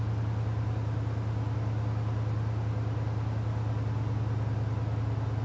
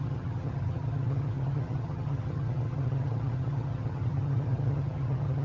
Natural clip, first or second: first